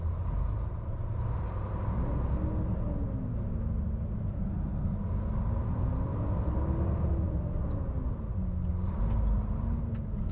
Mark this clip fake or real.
real